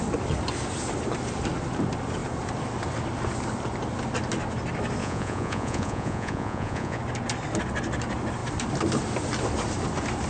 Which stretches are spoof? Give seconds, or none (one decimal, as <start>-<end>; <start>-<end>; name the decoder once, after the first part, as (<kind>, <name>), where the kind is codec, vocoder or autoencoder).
5.0-7.0 (vocoder, Vocos)